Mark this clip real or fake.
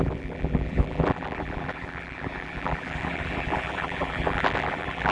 fake